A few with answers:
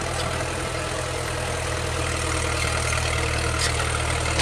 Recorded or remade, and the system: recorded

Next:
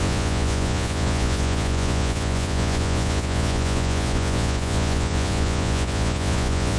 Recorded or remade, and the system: remade, vocoder, Vocos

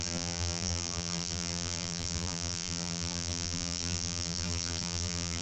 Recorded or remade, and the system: remade, vocoder, BigVGAN v2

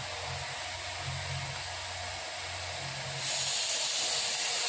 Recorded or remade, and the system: recorded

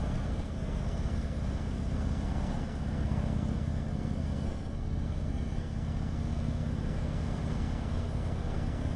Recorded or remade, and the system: remade, codec, SNAC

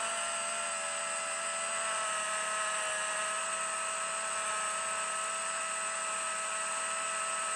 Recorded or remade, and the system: recorded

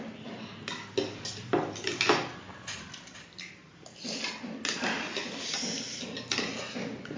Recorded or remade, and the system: recorded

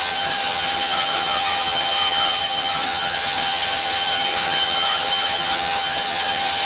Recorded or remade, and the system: remade, vocoder, HiFi-GAN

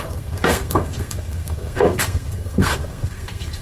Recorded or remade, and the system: remade, codec, SNAC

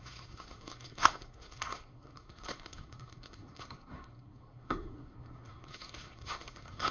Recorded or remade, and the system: remade, codec, SNAC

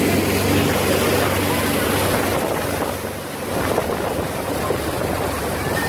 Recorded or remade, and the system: recorded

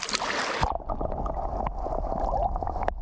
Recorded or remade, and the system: recorded